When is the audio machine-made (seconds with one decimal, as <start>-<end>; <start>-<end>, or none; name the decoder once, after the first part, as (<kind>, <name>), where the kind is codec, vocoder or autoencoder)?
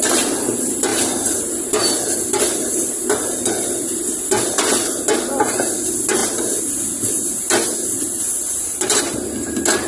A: none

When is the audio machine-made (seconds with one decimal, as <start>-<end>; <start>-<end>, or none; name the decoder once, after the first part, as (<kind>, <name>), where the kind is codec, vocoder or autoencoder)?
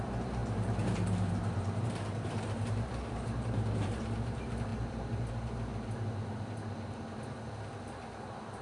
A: 0.0-5.7 (vocoder, BigVGAN v2); 7.3-8.6